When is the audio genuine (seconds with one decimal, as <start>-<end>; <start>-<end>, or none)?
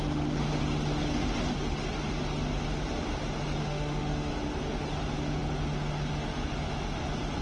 0.0-3.6; 4.3-7.4